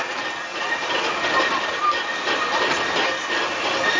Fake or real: fake